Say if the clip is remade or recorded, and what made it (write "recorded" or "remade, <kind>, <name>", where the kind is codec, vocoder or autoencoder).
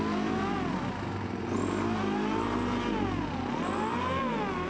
recorded